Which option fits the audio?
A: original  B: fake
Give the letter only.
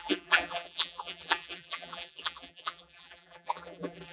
B